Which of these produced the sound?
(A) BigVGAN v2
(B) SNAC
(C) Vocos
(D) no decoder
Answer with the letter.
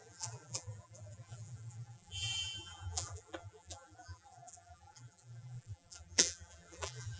A